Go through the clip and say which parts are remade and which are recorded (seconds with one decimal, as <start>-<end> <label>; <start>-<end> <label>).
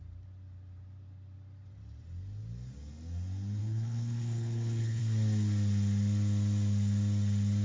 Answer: 0.0-3.6 recorded; 3.6-5.0 remade; 5.0-7.6 recorded